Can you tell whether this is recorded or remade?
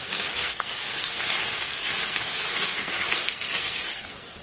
remade